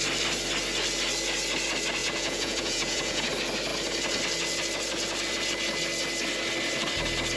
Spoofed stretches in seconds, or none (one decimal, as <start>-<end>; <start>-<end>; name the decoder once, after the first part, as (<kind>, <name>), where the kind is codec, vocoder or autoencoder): 2.0-3.3 (vocoder, Vocos)